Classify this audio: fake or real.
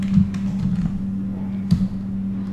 real